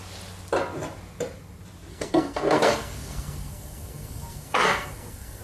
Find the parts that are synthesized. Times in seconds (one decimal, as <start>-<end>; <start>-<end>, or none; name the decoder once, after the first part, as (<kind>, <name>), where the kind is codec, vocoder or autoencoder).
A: 1.9-5.4 (codec, SNAC)